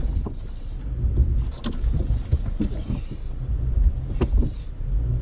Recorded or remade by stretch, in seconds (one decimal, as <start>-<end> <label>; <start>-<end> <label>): 0.0-5.2 recorded